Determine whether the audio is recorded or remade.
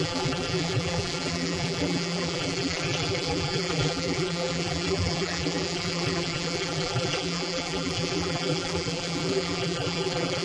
remade